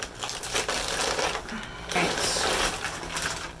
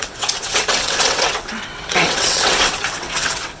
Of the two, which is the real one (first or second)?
first